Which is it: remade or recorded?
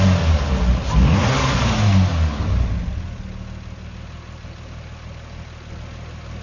recorded